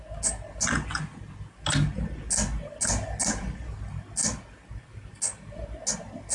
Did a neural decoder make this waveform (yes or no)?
no